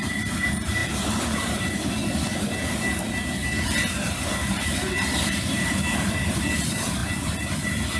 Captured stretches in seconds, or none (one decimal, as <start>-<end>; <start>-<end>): 2.0-4.1